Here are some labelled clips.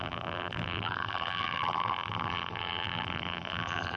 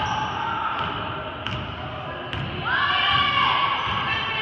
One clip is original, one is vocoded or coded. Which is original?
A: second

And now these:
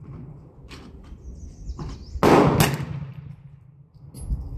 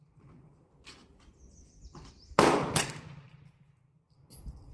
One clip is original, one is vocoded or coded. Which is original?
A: first